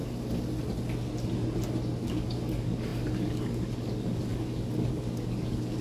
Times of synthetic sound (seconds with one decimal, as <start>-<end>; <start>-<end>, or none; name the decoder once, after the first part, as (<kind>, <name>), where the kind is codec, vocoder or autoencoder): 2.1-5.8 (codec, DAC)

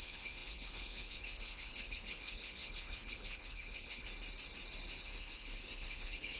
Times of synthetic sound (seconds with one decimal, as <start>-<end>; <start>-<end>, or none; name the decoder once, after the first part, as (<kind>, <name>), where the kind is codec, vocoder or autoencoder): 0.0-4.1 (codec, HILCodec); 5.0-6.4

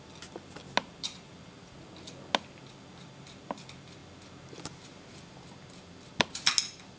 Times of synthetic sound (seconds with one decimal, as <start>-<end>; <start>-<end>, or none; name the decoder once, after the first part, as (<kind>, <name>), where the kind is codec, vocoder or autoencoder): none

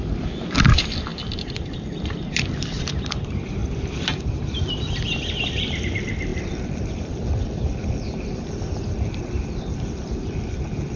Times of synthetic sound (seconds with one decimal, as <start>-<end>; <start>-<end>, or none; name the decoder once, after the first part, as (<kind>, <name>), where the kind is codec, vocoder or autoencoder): 1.1-2.6 (vocoder, BigVGAN v2); 3.6-5.6

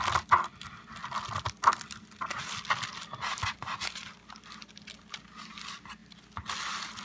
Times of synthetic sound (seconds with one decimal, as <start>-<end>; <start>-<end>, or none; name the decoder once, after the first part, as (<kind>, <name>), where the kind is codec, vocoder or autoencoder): none

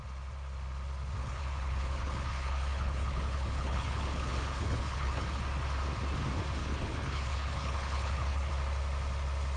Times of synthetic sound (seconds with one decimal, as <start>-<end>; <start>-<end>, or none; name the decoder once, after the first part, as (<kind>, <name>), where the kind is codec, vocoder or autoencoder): 1.2-5.4 (codec, HILCodec); 6.6-8.5

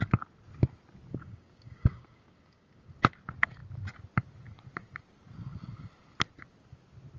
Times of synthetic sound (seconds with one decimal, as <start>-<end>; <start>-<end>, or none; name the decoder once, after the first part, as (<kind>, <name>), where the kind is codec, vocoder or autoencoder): 1.1-2.9 (codec, DAC)